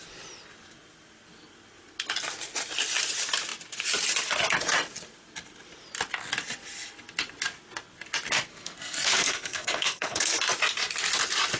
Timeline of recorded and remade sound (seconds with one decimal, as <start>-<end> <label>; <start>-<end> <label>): 0.0-8.5 recorded; 8.5-10.3 remade; 10.3-11.6 recorded